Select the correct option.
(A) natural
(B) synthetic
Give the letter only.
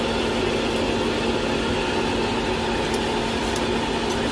A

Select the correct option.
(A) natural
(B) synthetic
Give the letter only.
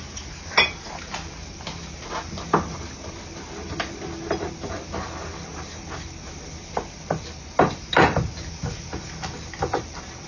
A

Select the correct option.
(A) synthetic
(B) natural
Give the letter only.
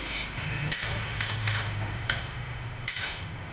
A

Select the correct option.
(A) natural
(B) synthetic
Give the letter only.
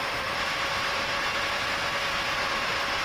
A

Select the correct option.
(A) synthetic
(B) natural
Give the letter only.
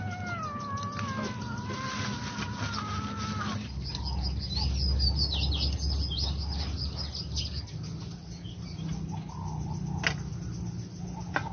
B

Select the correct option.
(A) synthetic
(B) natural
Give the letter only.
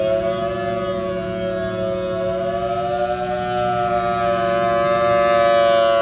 B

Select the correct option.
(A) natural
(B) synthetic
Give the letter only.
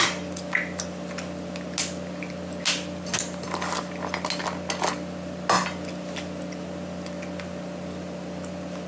A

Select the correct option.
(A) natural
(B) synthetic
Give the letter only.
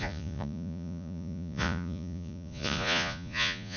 B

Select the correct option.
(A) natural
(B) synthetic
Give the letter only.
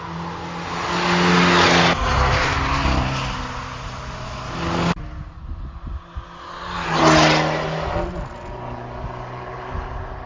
A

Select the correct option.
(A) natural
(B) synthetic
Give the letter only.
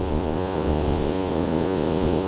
B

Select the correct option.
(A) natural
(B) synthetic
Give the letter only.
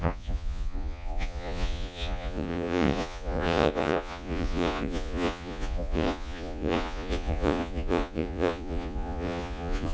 B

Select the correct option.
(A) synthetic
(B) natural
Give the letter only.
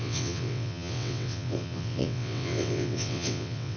A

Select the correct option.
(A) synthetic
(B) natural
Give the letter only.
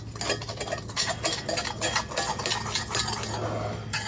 B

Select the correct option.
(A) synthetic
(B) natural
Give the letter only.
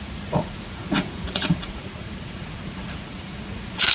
A